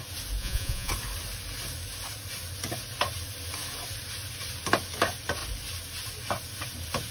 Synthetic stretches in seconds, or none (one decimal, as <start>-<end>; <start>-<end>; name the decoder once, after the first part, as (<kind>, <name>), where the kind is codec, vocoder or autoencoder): 0.4-0.9 (vocoder, Vocos)